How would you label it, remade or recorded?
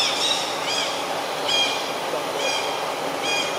recorded